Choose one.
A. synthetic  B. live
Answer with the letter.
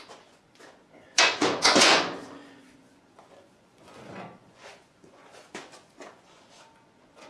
A